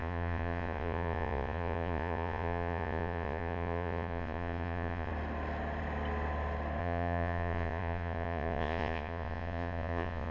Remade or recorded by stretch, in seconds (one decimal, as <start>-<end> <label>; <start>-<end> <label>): 0.0-5.1 remade; 5.1-6.8 recorded; 6.8-10.3 remade